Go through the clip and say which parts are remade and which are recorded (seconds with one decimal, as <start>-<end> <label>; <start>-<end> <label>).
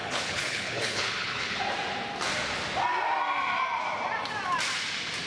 0.0-1.6 remade; 1.6-5.3 recorded